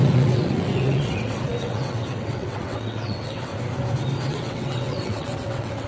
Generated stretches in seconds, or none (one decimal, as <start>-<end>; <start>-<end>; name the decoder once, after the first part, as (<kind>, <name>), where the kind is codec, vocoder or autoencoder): 0.0-3.5 (vocoder, WaveNeXt); 4.2-5.9

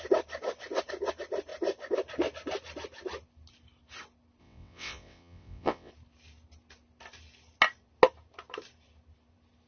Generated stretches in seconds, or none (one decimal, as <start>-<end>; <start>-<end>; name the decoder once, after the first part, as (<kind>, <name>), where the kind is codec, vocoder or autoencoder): 4.4-5.9 (vocoder, WaveNeXt)

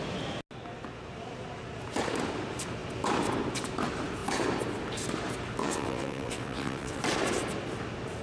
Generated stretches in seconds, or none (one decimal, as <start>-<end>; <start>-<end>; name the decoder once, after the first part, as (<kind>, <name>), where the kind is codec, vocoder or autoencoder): 5.6-7.0 (vocoder, WaveNeXt)

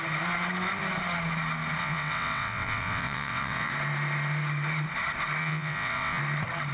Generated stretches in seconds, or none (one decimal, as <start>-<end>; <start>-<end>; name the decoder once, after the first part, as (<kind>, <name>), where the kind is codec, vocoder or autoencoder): 1.8-3.7 (vocoder, WaveNeXt); 5.4-6.2

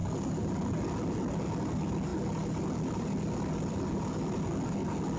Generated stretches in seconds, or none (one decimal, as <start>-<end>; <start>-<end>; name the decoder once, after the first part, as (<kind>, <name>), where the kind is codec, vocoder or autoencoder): none

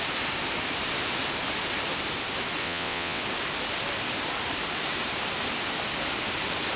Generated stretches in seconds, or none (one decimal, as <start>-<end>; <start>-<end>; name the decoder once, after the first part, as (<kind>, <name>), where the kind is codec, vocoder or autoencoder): 2.6-3.2 (vocoder, WaveNeXt)